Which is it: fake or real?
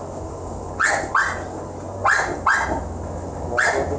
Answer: real